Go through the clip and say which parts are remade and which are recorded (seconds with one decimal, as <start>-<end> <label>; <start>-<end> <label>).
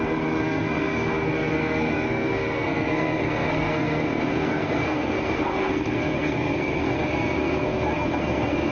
0.0-8.7 remade